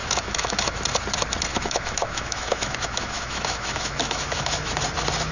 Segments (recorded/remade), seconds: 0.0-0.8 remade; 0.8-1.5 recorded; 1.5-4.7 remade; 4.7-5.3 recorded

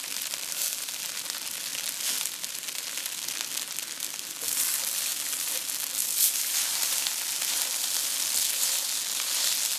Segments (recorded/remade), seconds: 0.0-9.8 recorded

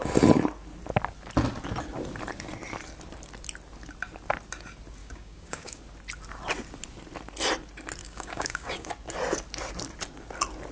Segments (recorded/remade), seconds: 0.0-5.0 recorded; 5.0-5.8 remade; 5.8-8.0 recorded; 8.0-8.9 remade; 8.9-10.7 recorded

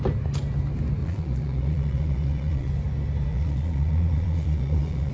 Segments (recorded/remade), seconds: 0.0-1.0 recorded; 1.0-2.7 remade; 2.7-3.3 recorded; 3.3-5.1 remade

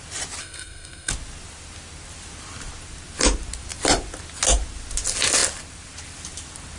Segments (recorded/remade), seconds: 0.0-0.4 recorded; 0.4-1.1 remade; 1.1-6.8 recorded